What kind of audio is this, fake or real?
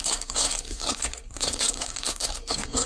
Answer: fake